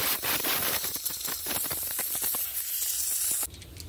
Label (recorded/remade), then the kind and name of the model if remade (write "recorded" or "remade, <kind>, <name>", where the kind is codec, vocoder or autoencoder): recorded